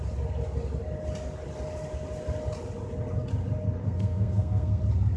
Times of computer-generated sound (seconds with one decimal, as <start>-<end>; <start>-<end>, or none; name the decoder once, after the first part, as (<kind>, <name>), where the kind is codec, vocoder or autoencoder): 3.8-4.8 (codec, SNAC)